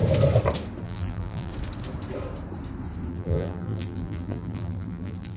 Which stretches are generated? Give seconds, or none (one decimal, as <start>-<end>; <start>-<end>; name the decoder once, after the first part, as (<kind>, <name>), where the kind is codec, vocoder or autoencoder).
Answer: 0.8-1.5 (vocoder, BigVGAN v2); 3.1-5.4